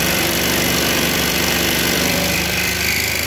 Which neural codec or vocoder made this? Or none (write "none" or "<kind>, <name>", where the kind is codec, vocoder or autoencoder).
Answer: vocoder, BigVGAN v2